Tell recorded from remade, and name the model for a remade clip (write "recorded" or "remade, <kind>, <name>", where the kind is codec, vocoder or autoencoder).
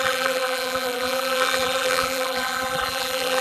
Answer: remade, vocoder, BigVGAN v2